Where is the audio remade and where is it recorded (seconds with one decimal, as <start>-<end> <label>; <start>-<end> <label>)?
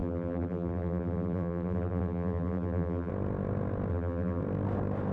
0.0-3.1 remade; 3.1-3.9 recorded; 3.9-4.4 remade; 4.4-5.1 recorded